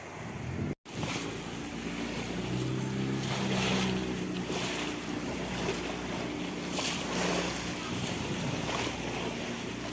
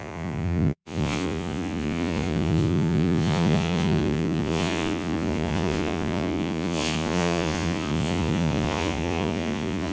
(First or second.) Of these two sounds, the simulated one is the second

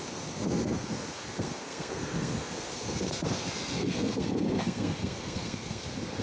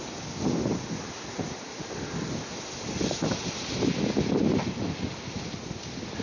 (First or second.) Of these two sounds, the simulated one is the first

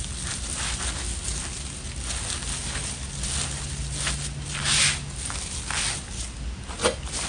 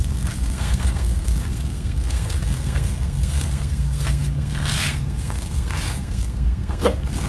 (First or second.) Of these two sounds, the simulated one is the second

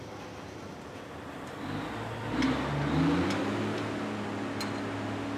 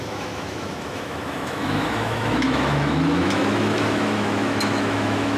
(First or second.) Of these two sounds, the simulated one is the second